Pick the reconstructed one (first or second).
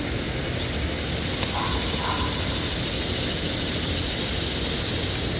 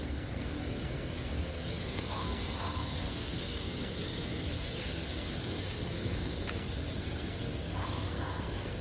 second